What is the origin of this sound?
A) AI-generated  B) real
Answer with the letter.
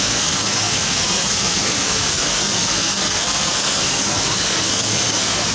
A